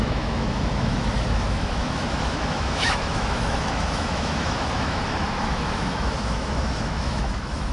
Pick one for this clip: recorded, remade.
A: remade